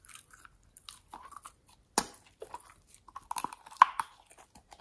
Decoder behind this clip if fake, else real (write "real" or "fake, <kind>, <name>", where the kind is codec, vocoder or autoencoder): real